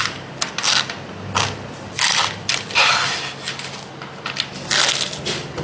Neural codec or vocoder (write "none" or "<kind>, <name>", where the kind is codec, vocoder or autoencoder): none